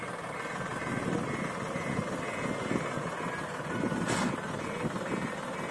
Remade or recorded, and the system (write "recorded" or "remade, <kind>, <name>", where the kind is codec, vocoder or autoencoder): recorded